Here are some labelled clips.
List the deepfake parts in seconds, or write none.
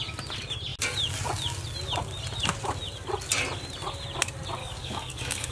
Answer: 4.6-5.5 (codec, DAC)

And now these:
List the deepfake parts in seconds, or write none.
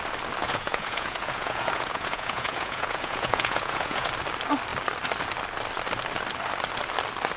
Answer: 0.4-4.1 (vocoder, Vocos)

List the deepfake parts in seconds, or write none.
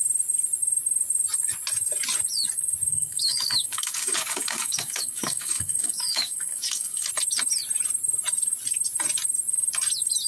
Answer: 2.9-7.1 (codec, DAC)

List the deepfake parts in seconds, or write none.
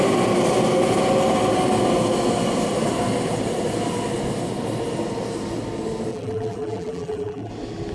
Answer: 6.1-7.5 (vocoder, BigVGAN v2)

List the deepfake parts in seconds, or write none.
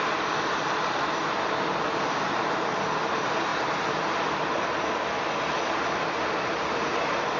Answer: 3.5-4.0 (vocoder, BigVGAN v2)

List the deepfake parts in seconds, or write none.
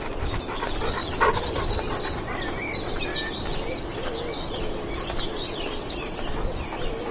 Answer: none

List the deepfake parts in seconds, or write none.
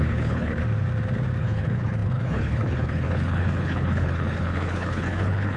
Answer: 0.0-0.6 (codec, HILCodec); 1.4-5.6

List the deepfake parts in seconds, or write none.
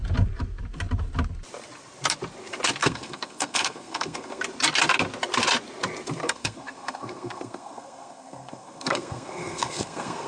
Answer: 2.8-4.4 (codec, SNAC); 6.2-10.3